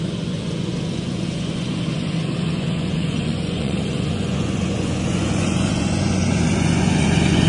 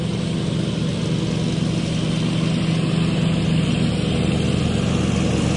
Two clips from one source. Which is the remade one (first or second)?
first